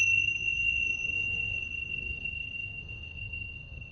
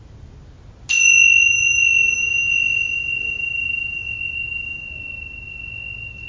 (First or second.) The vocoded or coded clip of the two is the first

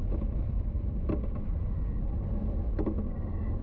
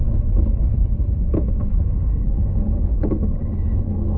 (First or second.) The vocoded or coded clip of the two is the second